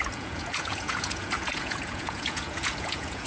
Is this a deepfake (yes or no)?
yes